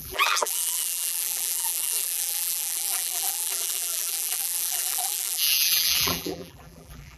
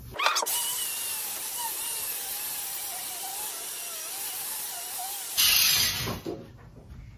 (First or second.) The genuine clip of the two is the second